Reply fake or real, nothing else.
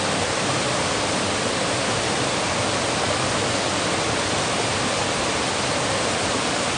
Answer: real